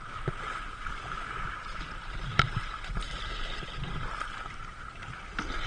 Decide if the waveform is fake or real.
real